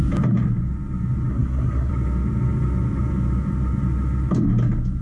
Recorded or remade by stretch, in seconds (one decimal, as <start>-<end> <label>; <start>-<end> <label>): 0.0-1.3 recorded; 1.3-1.9 remade; 1.9-5.0 recorded